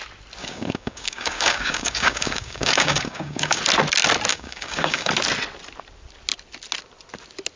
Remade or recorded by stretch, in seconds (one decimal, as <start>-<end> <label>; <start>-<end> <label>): 0.0-0.4 recorded; 0.4-3.6 remade; 3.6-4.3 recorded; 4.3-5.1 remade; 5.1-7.6 recorded